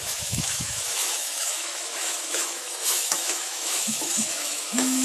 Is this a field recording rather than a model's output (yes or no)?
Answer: no